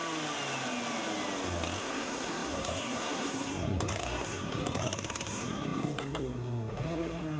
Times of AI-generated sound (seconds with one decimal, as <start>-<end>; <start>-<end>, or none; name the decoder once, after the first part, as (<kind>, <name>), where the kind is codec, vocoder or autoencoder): 1.8-7.4 (codec, SNAC)